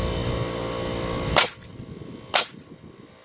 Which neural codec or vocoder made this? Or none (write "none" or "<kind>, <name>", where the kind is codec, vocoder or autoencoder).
none